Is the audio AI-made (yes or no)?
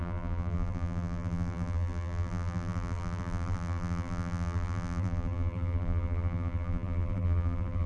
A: yes